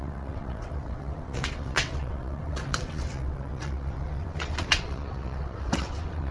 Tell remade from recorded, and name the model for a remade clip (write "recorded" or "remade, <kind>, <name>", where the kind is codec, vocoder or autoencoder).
remade, vocoder, WaveNeXt